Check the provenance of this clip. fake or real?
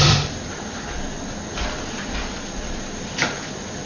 real